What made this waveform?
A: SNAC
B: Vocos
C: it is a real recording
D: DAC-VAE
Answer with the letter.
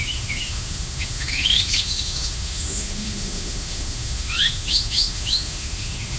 D